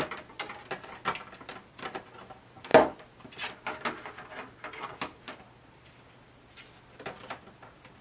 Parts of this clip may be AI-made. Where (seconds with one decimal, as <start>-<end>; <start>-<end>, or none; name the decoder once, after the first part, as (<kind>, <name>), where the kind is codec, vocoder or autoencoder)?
none